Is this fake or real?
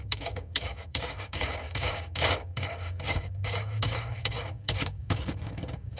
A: fake